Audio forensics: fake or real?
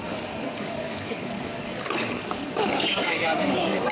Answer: fake